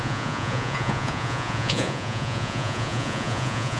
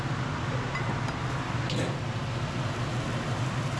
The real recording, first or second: second